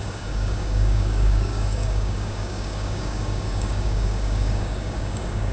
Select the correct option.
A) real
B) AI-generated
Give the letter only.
B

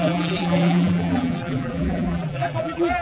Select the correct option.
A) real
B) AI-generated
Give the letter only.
B